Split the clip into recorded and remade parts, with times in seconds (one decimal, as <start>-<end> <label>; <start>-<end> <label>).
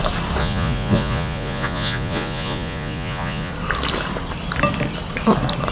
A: 0.0-0.4 recorded; 0.4-3.5 remade; 3.5-5.7 recorded